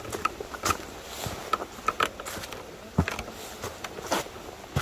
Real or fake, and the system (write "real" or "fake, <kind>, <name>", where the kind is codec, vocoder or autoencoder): real